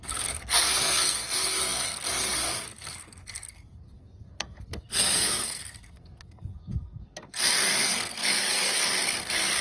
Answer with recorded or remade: remade